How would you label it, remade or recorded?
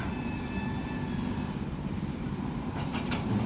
recorded